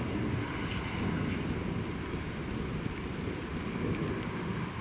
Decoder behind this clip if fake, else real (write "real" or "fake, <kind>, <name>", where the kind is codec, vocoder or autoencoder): real